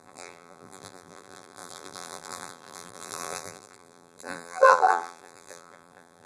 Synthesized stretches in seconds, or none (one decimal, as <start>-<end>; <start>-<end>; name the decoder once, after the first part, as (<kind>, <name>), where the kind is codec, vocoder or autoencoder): 0.0-6.3 (vocoder, BigVGAN v2)